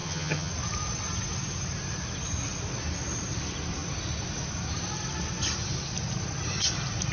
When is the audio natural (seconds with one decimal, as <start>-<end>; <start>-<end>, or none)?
0.5-7.1